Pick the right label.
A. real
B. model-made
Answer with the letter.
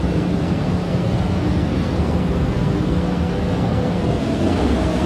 B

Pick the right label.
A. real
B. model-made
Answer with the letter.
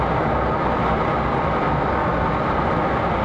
A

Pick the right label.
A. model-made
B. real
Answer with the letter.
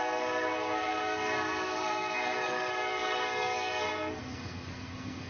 A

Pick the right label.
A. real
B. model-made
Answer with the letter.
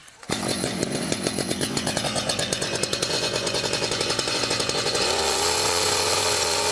B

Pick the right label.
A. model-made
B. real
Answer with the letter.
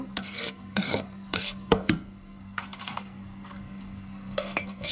A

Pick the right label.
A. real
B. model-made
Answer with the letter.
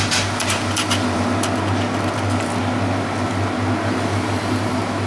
A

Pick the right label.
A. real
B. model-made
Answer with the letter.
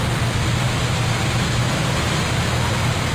A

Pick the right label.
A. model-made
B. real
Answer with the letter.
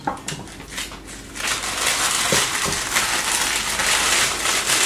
B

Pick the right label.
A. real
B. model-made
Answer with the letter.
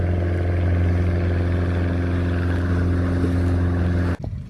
A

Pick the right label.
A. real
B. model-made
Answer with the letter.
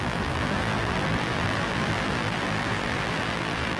B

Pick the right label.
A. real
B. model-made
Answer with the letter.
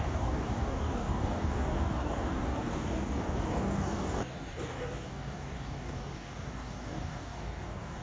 B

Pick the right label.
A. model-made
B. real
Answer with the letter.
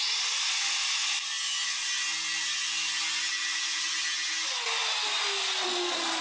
B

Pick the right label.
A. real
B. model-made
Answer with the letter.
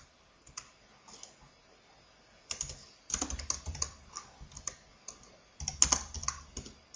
A